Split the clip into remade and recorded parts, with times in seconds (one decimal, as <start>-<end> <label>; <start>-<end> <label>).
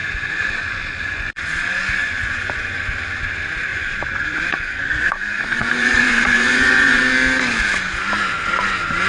0.0-2.8 remade; 2.8-3.7 recorded; 3.7-7.0 remade; 7.0-9.1 recorded